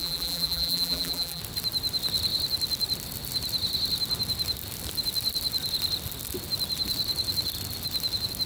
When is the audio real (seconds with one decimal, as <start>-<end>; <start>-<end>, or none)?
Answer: 1.4-8.5